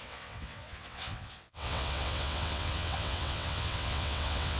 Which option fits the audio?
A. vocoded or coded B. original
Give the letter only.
A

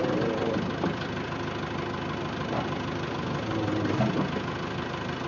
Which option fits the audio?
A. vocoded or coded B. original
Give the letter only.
B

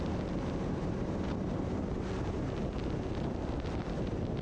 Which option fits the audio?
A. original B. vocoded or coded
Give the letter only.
A